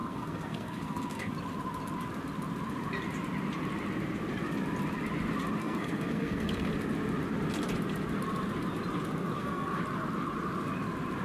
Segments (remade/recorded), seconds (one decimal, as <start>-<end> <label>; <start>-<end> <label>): 0.0-1.3 remade; 1.3-5.6 recorded; 5.6-6.7 remade; 6.7-9.3 recorded; 9.3-9.8 remade; 9.8-11.2 recorded